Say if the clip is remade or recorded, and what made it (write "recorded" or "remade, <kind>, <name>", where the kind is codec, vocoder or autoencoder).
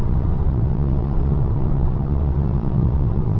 remade, vocoder, WaveNeXt